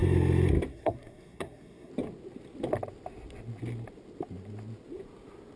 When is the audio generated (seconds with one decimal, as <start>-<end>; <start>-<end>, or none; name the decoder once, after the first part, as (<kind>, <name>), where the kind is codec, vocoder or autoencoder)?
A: 0.7-1.9 (codec, SNAC)